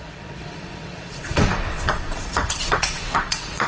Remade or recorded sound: remade